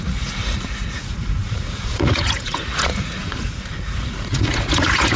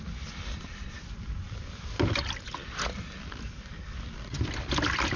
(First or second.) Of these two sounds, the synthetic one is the first